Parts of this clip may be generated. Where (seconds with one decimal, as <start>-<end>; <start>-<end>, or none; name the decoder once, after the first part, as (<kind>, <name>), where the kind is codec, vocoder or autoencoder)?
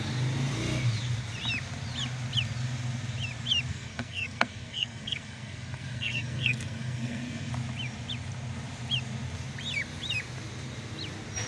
3.7-7.5 (codec, SNAC)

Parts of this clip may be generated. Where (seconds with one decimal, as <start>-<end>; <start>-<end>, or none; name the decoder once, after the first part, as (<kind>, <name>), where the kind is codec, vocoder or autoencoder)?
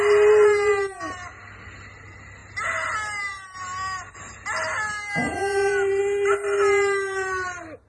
none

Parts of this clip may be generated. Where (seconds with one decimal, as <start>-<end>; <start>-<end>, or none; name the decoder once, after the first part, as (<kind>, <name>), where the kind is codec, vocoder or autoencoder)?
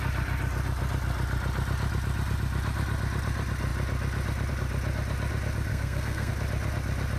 5.7-6.3 (codec, SNAC)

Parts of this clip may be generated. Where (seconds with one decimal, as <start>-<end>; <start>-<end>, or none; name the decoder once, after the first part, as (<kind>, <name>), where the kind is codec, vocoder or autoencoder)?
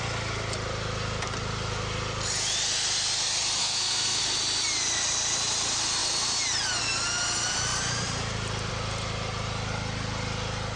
3.6-4.2 (codec, SNAC)